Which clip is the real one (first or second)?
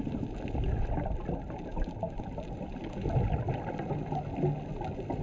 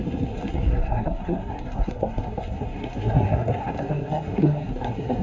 first